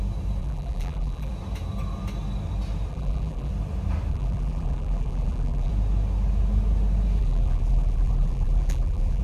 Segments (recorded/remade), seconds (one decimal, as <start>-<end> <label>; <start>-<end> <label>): 0.0-0.4 recorded; 0.4-1.3 remade; 1.3-2.9 recorded; 2.9-3.5 remade; 3.5-4.1 recorded; 4.1-5.7 remade; 5.7-7.2 recorded; 7.2-9.2 remade